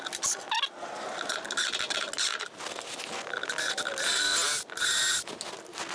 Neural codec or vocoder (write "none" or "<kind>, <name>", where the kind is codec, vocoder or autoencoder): none